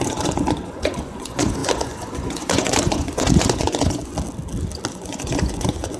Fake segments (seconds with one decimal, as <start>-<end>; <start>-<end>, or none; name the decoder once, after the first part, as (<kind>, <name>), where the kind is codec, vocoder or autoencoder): 0.0-4.1 (vocoder, Vocos); 4.9-6.0

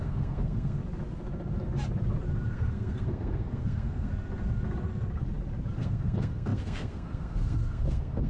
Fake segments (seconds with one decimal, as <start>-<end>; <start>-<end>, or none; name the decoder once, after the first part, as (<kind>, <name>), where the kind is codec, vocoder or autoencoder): 0.0-0.8 (codec, SNAC); 2.5-4.1; 5.8-8.3

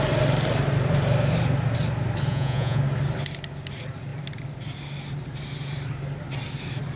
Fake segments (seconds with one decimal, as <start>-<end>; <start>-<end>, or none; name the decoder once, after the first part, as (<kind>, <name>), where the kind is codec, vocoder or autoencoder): 2.3-2.8 (vocoder, Vocos)

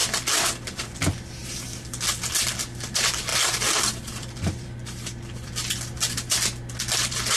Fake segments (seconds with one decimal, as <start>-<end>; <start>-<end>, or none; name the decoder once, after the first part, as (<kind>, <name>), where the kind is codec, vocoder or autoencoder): 1.4-2.0 (vocoder, BigVGAN v2); 3.3-5.7

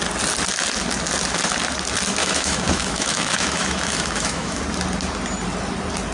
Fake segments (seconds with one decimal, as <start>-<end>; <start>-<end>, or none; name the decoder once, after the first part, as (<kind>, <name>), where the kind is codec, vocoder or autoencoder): 2.2-4.6 (autoencoder, DAC-VAE)